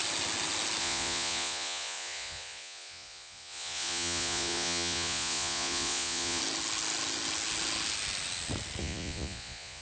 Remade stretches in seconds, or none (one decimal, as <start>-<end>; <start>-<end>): 0.8-6.4; 8.8-9.8